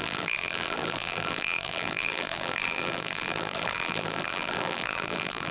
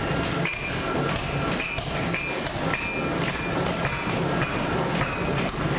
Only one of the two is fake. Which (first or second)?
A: first